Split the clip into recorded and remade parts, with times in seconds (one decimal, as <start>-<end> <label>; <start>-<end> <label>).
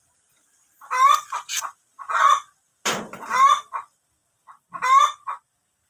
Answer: 0.0-1.9 remade; 1.9-5.4 recorded; 5.4-5.9 remade